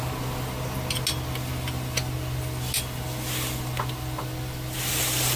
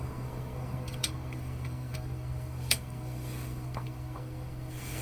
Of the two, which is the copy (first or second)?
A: second